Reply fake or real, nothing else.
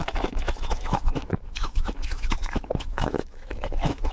fake